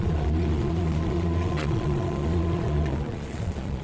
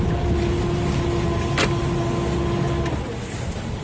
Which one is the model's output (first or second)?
first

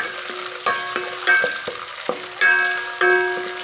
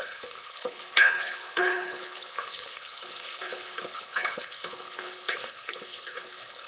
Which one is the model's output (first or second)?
second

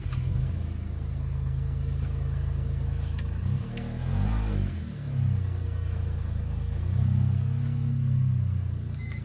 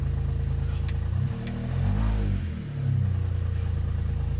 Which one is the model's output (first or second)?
first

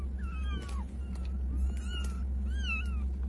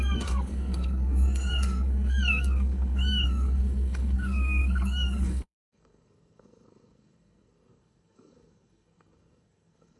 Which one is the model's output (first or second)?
second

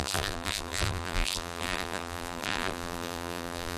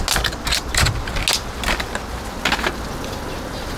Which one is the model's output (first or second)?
first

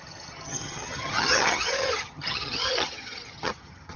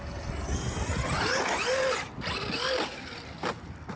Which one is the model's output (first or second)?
first